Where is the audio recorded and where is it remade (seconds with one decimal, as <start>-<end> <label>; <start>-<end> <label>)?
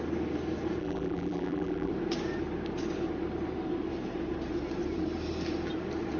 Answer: 0.0-0.8 recorded; 0.8-1.9 remade; 1.9-6.2 recorded